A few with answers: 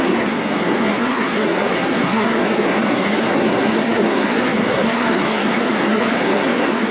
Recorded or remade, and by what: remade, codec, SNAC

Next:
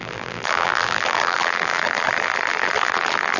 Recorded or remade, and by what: remade, vocoder, BigVGAN v2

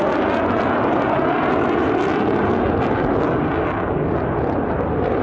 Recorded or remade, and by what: recorded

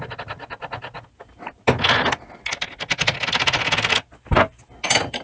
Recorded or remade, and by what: recorded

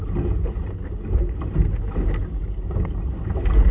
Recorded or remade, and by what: recorded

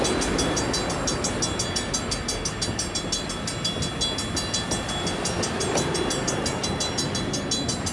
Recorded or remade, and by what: recorded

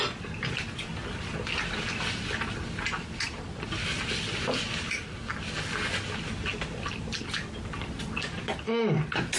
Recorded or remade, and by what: recorded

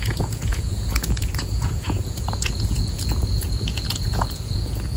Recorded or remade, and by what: remade, vocoder, Vocos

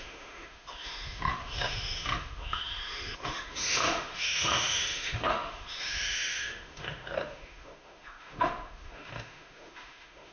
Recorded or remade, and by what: remade, autoencoder, DAC-VAE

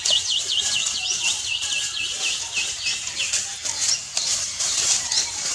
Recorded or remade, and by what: recorded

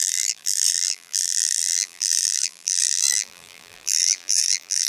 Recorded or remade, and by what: remade, vocoder, BigVGAN v2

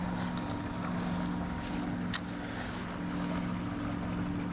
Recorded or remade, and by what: recorded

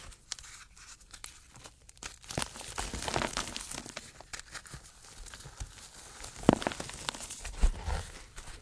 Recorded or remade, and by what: recorded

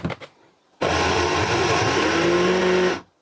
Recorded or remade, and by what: recorded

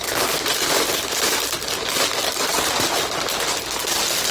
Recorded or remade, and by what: recorded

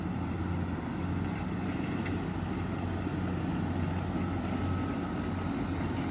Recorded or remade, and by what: recorded